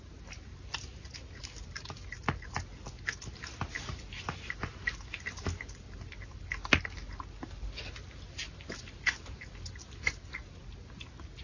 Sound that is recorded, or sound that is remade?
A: recorded